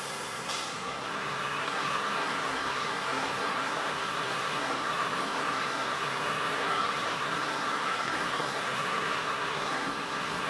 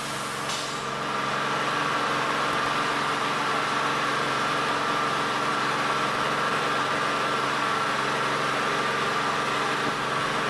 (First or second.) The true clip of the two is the second